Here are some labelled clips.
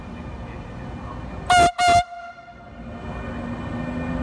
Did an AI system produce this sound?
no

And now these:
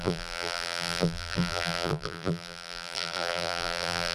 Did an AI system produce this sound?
yes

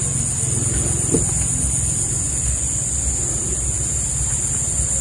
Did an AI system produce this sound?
no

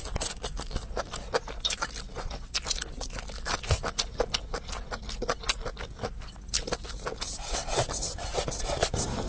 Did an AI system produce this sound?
no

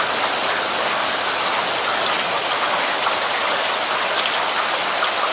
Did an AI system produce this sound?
no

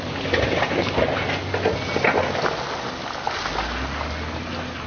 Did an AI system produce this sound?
no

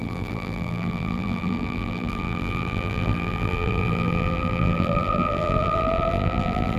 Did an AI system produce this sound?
yes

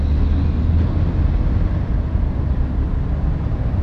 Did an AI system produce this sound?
no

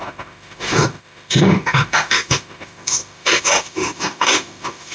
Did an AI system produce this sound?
yes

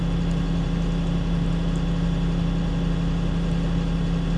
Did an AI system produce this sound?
no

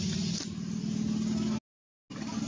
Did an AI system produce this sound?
no